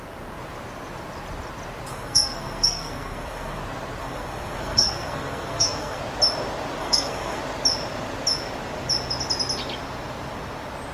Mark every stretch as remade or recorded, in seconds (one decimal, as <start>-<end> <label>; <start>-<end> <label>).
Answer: 0.0-1.9 recorded; 1.9-3.6 remade; 3.6-4.0 recorded; 4.0-6.0 remade; 6.0-6.8 recorded; 6.8-7.4 remade; 7.4-10.9 recorded